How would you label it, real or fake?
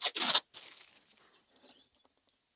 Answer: real